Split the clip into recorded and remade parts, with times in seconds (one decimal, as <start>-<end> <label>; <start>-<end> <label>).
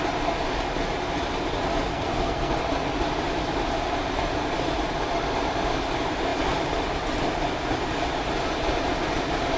0.0-1.9 recorded; 1.9-2.5 remade; 2.5-9.6 recorded